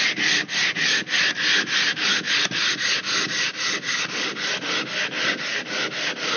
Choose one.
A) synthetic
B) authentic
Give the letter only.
B